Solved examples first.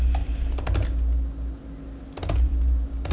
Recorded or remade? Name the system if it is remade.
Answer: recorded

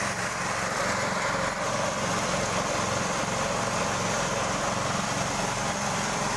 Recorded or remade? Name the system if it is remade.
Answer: recorded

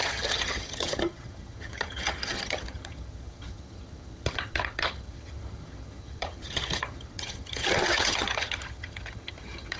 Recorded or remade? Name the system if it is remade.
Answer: remade, vocoder, HiFi-GAN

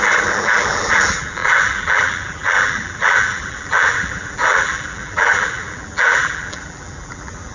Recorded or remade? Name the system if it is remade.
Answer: remade, vocoder, BigVGAN v2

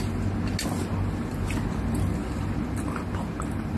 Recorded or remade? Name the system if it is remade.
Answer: recorded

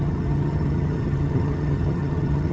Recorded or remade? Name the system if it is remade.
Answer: remade, vocoder, HiFi-GAN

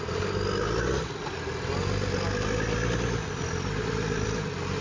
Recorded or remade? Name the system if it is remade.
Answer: recorded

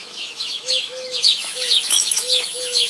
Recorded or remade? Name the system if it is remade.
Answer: remade, autoencoder, DAC-VAE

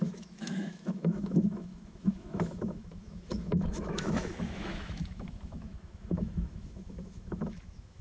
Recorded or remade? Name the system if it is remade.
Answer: remade, autoencoder, DAC-VAE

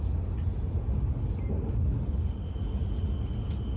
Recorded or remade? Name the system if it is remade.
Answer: recorded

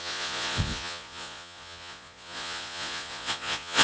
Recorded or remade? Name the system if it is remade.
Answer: remade, vocoder, Vocos